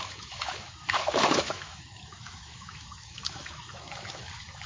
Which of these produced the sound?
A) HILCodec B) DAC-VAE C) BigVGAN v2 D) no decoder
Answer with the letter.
B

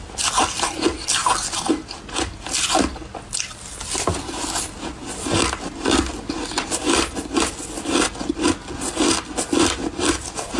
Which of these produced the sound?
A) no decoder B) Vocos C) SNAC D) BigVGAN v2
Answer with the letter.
A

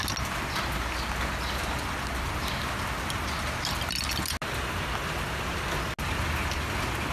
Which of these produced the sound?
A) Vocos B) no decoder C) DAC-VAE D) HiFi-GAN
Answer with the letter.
B